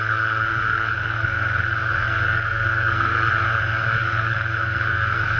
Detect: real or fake fake